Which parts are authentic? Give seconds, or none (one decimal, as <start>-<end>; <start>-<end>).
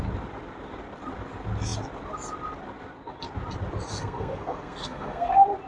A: 0.0-3.9; 5.3-5.7